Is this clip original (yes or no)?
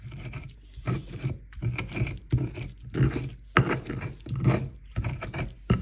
yes